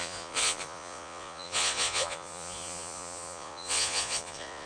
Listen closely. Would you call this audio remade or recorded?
remade